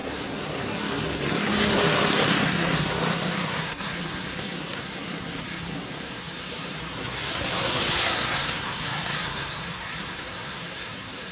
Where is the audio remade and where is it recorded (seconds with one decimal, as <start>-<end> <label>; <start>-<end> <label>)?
0.0-11.3 remade